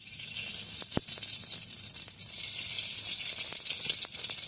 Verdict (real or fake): real